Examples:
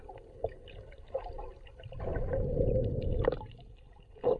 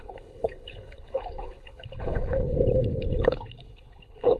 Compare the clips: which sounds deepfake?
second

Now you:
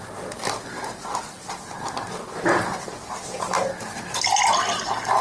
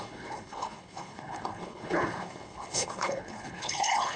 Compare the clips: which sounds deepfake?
second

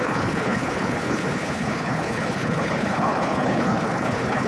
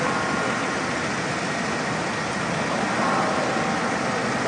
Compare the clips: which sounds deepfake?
first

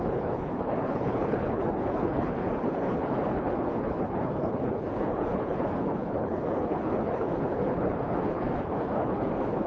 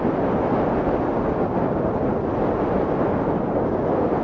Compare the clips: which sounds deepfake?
first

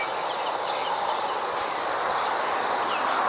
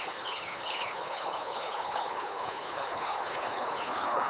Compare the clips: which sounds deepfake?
second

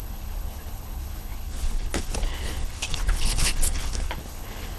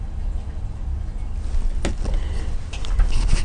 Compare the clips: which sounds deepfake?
first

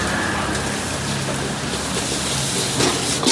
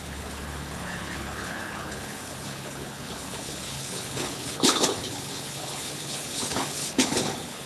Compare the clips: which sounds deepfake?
second